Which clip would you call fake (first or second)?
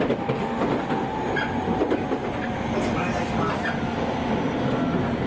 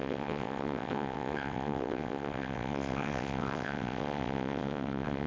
second